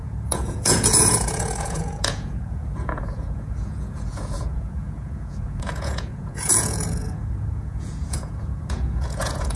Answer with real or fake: fake